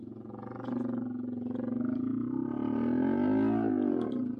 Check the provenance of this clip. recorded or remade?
recorded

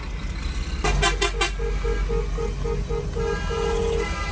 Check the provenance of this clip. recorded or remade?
recorded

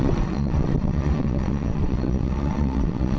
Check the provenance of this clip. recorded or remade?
remade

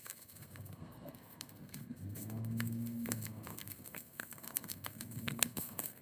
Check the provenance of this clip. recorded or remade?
remade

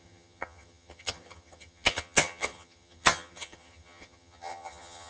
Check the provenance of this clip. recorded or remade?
remade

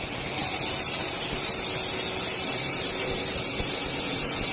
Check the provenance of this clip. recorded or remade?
recorded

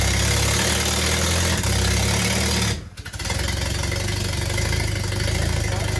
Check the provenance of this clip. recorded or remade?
recorded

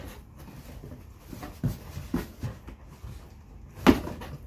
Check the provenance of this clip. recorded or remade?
recorded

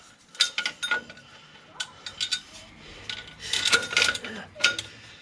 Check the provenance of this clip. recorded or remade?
recorded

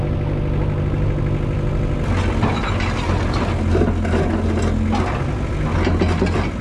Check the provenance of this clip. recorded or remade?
recorded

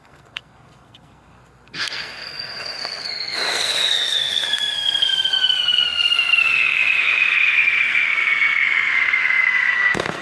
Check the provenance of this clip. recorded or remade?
remade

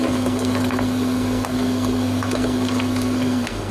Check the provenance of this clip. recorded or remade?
remade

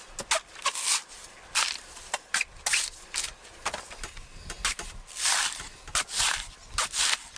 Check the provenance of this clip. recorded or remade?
recorded